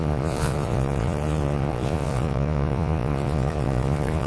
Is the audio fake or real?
fake